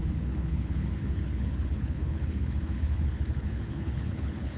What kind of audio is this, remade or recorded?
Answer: remade